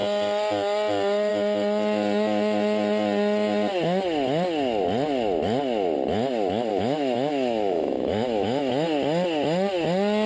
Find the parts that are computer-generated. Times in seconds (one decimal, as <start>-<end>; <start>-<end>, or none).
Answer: 6.7-8.7

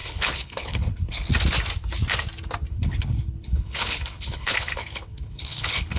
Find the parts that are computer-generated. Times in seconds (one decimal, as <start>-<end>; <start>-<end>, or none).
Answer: 0.0-1.3; 2.7-6.0

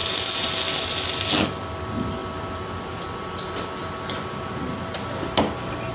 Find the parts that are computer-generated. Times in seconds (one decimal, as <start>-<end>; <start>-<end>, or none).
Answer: none

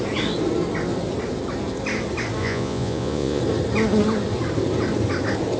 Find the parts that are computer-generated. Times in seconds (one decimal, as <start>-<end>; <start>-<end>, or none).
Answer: 2.4-3.4

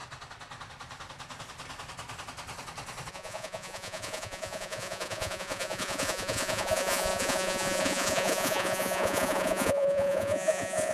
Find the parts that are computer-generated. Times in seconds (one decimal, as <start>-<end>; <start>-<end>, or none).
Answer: 3.1-10.9

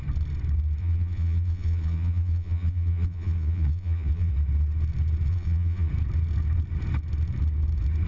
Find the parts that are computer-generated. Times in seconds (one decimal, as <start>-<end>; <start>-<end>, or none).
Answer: 0.8-4.3; 5.3-5.9